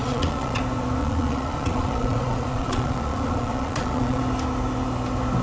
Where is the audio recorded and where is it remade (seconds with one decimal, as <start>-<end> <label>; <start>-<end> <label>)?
0.0-0.6 remade; 0.6-1.0 recorded; 1.0-4.2 remade; 4.2-5.4 recorded